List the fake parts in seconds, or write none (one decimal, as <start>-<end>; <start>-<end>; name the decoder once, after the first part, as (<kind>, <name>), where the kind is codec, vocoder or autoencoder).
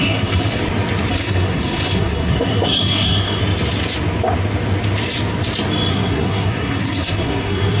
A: 0.0-0.6 (codec, SNAC); 1.1-3.4; 5.9-7.8